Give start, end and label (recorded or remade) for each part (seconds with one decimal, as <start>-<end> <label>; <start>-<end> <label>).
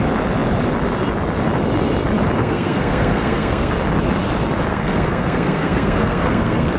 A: 0.0-2.4 recorded; 2.4-3.7 remade; 3.7-4.7 recorded; 4.7-6.8 remade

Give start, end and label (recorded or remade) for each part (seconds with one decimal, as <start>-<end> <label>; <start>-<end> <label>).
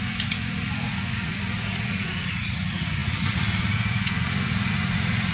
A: 0.0-5.3 remade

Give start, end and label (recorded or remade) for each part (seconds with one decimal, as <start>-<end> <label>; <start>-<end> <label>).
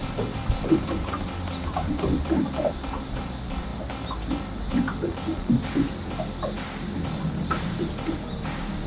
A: 0.0-3.7 remade; 3.7-4.7 recorded; 4.7-8.9 remade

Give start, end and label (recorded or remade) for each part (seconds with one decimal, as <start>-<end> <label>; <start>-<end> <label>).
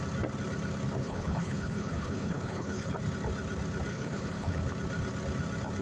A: 0.0-1.0 recorded; 1.0-2.9 remade; 2.9-3.9 recorded; 3.9-4.6 remade; 4.6-5.8 recorded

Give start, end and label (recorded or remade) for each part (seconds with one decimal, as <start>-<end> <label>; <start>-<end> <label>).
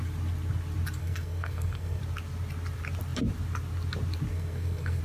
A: 0.0-1.0 recorded; 1.0-2.0 remade; 2.0-4.3 recorded; 4.3-5.0 remade